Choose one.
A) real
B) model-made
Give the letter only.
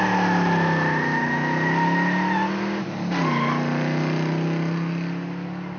A